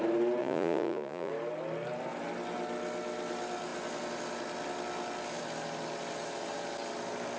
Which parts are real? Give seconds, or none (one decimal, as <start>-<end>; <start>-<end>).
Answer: 0.0-0.4; 1.3-7.4